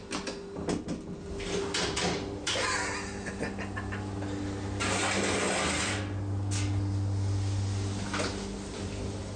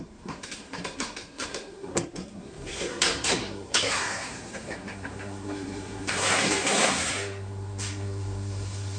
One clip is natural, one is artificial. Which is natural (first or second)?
first